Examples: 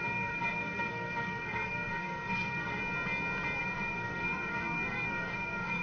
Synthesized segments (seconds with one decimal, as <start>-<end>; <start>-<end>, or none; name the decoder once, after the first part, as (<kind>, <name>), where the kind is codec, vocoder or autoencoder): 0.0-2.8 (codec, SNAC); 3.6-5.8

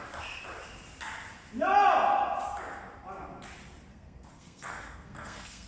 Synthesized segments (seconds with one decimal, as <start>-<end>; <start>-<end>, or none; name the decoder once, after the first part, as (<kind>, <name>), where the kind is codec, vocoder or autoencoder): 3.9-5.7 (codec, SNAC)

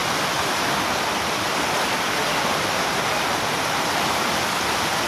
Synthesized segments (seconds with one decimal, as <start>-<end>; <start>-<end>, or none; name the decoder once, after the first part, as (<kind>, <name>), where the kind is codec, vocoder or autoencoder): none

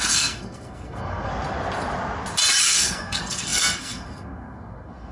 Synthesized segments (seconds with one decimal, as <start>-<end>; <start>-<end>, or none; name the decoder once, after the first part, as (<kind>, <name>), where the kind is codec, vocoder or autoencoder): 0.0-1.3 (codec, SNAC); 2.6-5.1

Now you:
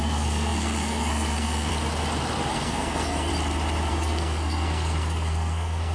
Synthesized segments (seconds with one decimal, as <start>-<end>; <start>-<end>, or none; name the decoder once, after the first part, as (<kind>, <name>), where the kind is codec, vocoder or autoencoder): 0.0-1.7 (codec, SNAC); 2.5-3.3; 3.9-5.9

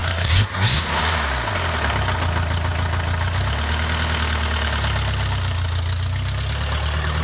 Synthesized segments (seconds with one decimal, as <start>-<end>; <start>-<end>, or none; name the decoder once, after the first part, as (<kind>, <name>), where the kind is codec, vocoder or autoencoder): 0.0-1.0 (codec, SNAC)